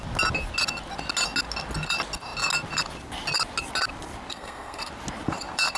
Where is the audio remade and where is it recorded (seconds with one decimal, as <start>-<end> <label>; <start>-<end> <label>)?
0.0-4.3 recorded; 4.3-4.9 remade; 4.9-5.8 recorded